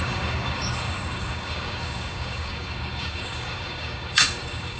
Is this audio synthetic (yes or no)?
yes